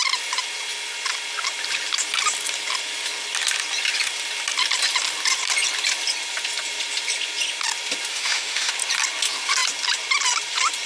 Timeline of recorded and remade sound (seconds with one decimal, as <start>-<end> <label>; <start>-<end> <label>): 0.0-8.1 recorded; 8.1-8.7 remade; 8.7-10.9 recorded

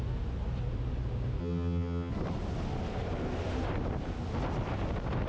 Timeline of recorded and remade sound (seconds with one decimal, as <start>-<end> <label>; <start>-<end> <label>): 0.0-1.4 recorded; 1.4-2.1 remade; 2.1-5.3 recorded